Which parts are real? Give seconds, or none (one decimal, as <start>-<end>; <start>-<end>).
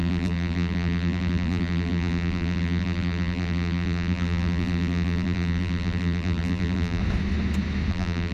7.0-7.9